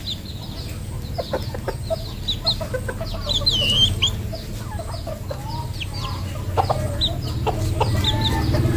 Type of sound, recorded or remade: recorded